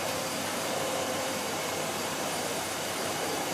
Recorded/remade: remade